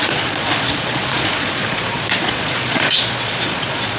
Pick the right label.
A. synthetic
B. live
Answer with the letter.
A